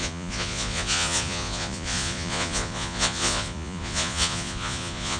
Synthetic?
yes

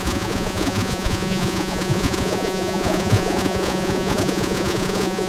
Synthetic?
yes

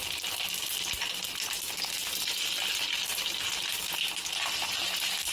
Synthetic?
no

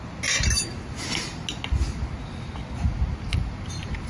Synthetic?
no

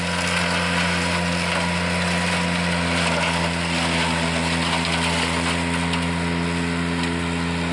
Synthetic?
no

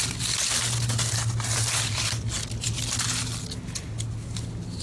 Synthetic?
no